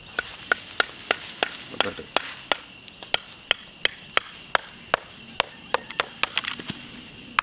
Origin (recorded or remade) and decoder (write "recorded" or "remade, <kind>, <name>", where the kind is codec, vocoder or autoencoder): recorded